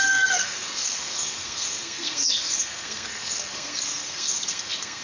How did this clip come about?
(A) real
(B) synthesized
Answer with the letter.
B